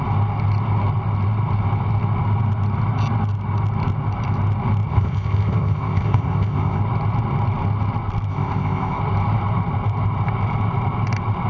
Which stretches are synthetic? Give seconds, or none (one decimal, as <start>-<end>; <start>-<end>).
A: 4.9-6.8; 8.3-9.0